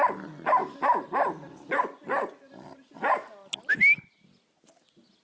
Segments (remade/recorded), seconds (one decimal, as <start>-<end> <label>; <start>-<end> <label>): 0.0-5.2 recorded